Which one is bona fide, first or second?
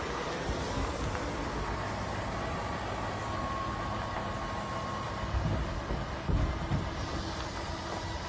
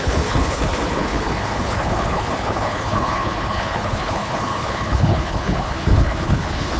first